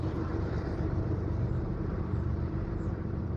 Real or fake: fake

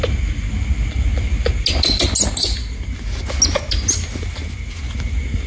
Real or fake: real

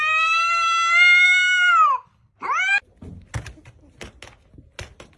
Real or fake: real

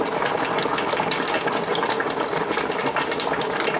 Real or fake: real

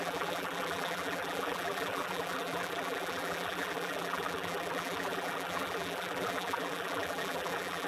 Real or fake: fake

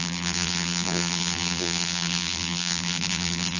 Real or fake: fake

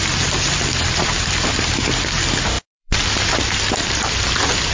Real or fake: fake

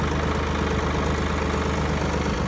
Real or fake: real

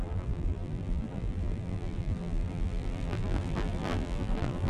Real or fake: fake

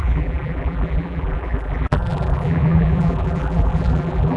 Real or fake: fake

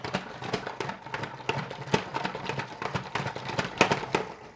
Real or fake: real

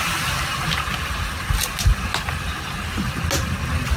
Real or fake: real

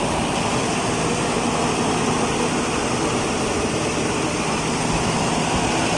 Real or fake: real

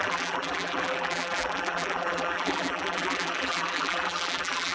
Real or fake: fake